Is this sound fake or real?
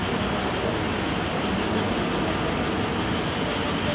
real